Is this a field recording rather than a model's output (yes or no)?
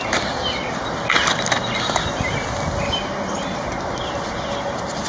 yes